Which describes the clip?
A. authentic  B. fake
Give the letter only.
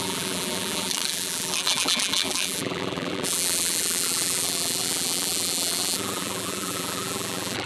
B